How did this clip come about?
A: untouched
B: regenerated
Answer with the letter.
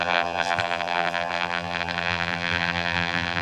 B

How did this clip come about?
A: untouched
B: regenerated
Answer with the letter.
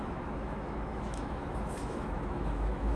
B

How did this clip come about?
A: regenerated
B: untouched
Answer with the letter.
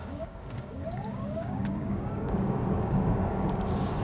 A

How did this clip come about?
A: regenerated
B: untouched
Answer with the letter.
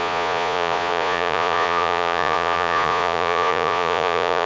A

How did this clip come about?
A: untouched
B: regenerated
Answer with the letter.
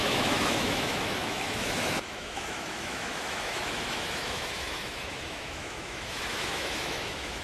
B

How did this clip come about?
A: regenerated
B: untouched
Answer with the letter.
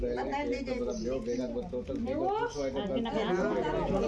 B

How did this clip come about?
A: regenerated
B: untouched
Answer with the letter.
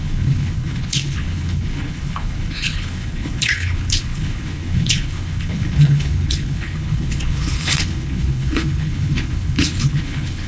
A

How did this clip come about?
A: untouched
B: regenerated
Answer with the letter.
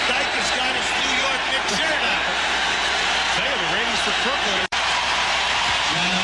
B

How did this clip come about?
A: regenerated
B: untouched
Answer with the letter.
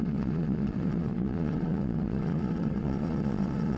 A